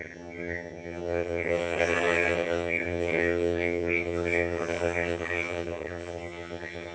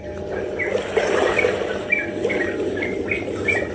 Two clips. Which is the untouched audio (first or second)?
second